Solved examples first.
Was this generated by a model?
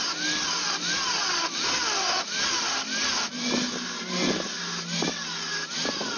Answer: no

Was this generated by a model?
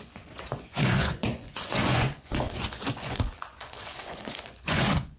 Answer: yes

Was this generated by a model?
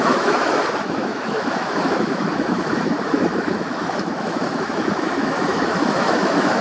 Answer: yes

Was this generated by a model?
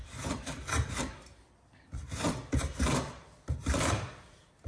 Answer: yes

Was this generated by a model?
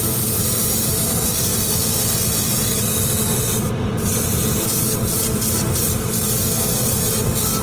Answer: no